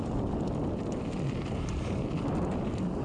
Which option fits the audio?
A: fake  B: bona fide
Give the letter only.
B